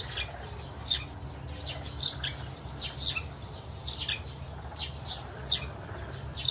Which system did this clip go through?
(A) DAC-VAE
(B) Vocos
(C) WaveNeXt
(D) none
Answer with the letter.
D